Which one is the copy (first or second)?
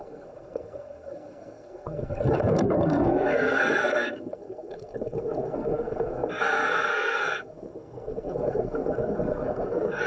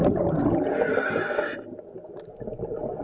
first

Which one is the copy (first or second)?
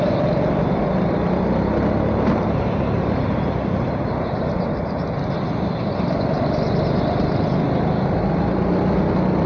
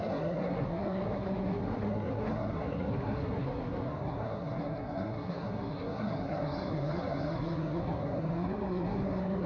second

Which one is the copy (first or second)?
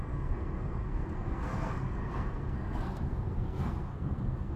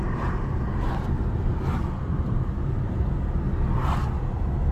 first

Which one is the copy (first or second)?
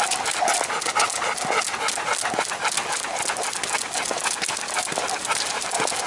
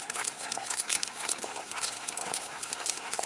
second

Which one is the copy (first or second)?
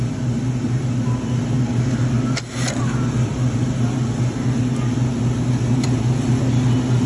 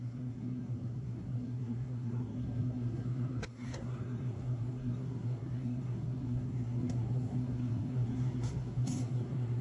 second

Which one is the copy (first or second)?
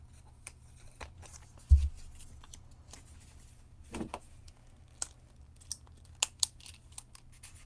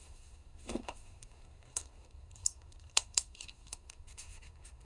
second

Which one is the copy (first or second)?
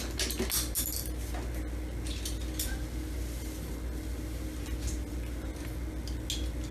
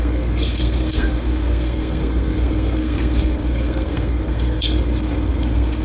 second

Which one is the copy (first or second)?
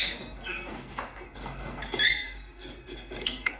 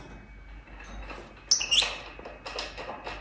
first